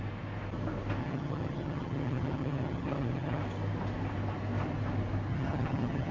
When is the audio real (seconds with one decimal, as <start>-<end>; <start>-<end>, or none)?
0.0-1.0; 3.4-5.3